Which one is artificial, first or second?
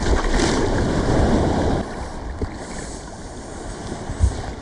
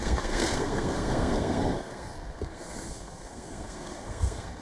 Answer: second